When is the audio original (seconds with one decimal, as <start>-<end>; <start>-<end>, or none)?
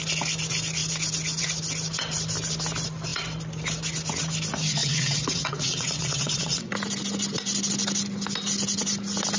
0.0-4.8; 6.7-9.4